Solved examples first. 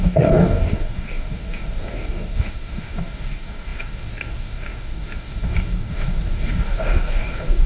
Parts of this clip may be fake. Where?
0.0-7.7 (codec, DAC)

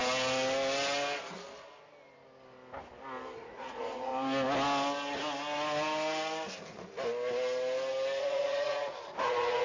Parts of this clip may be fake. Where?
3.4-4.1 (vocoder, Vocos); 8.2-9.6

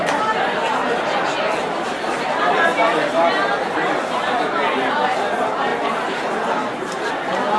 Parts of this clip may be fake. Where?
1.6-2.4 (vocoder, BigVGAN v2); 5.7-7.1

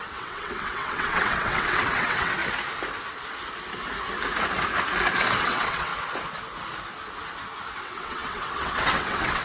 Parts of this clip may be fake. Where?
0.0-2.4 (vocoder, WaveNeXt); 5.4-5.9; 7.8-9.4

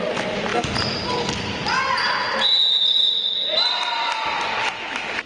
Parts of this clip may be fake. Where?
none

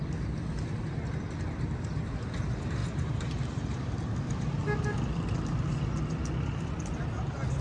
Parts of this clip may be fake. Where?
2.8-3.9 (vocoder, BigVGAN v2)

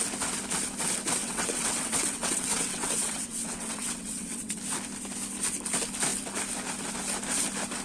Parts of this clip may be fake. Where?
1.2-4.6 (vocoder, WaveNeXt)